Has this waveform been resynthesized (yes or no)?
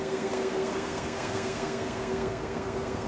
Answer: yes